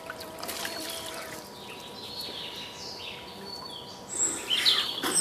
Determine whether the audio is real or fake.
real